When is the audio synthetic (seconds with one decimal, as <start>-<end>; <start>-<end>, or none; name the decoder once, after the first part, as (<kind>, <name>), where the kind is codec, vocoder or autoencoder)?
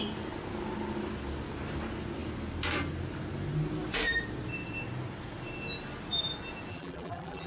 6.7-7.5 (vocoder, BigVGAN v2)